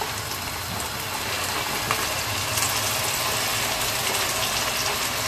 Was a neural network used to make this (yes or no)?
no